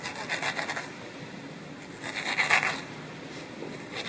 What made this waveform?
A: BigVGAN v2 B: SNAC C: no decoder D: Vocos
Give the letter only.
C